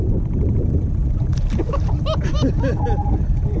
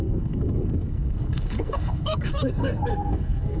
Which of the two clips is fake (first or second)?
second